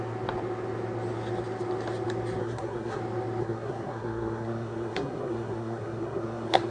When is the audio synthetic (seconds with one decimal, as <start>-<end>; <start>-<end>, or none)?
2.4-3.0; 3.4-6.7